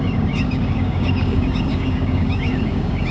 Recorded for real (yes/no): no